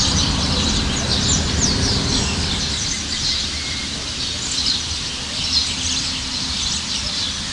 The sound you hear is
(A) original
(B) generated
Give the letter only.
A